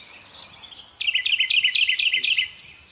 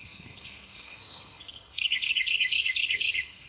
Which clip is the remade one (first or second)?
second